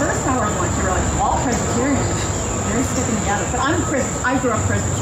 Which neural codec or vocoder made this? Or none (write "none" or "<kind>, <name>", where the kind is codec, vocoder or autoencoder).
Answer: none